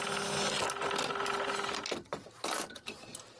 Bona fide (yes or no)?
yes